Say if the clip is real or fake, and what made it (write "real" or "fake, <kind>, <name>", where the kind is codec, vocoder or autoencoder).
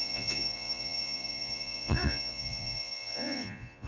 fake, vocoder, Vocos